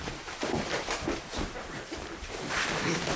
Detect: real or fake fake